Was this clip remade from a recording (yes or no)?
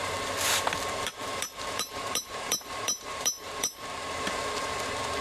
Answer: yes